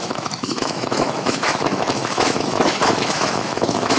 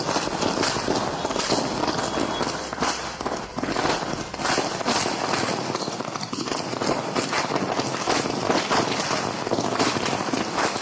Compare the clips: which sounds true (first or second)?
second